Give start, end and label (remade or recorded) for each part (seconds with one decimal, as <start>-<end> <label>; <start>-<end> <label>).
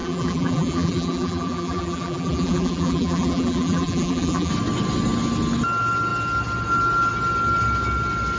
0.0-4.5 remade; 4.5-8.4 recorded